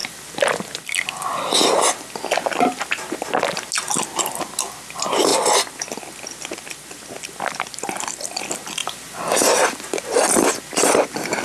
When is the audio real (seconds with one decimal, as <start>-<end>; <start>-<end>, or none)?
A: 0.0-5.3; 8.4-11.4